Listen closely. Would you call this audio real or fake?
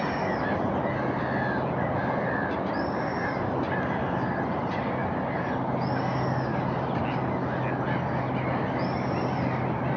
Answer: real